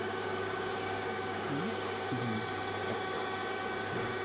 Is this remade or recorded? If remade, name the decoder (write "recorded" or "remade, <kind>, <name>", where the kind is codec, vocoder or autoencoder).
remade, codec, DAC